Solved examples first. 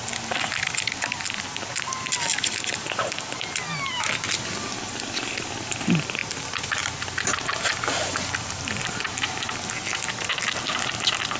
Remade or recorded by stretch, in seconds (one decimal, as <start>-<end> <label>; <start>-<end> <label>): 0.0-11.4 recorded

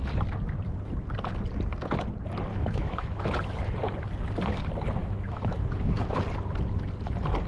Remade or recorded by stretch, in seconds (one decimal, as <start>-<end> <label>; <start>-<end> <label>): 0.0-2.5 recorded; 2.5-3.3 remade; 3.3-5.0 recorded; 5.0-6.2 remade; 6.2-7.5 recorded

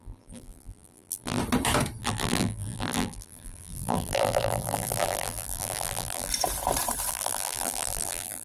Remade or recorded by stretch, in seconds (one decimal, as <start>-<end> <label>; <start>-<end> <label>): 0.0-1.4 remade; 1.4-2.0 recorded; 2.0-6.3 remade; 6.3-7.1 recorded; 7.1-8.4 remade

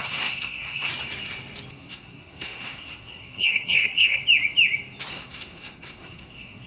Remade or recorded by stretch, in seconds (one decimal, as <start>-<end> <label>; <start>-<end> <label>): 0.0-0.9 remade; 0.9-1.7 recorded; 1.7-4.2 remade; 4.2-5.1 recorded; 5.1-6.7 remade

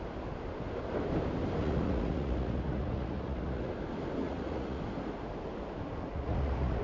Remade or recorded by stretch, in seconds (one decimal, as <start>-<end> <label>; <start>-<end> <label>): 0.0-1.6 recorded; 1.6-3.7 remade; 3.7-4.2 recorded; 4.2-4.8 remade; 4.8-6.1 recorded; 6.1-6.8 remade

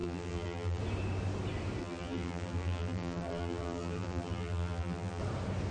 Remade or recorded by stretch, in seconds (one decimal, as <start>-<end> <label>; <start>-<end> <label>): 0.0-0.8 remade; 0.8-1.8 recorded; 1.8-5.2 remade; 5.2-5.7 recorded

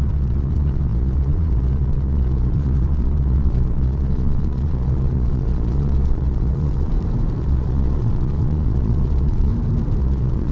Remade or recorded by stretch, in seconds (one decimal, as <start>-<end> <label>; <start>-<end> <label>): 0.0-6.9 remade; 6.9-7.4 recorded; 7.4-9.5 remade; 9.5-10.0 recorded; 10.0-10.5 remade